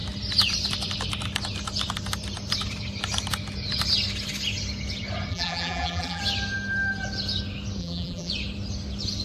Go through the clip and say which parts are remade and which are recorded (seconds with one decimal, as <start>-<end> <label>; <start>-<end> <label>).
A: 0.0-5.3 recorded; 5.3-6.2 remade; 6.2-7.8 recorded; 7.8-8.3 remade; 8.3-9.2 recorded